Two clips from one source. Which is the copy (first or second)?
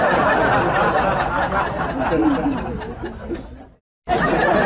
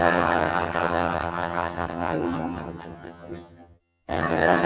second